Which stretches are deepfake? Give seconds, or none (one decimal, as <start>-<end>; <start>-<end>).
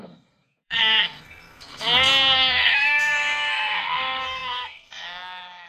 0.0-5.7